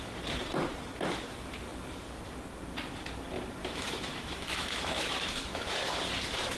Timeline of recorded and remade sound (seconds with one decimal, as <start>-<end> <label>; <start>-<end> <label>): 0.0-3.6 recorded; 3.6-5.7 remade; 5.7-6.6 recorded